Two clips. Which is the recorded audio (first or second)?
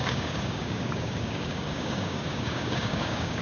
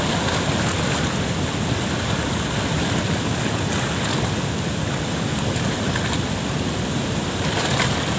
second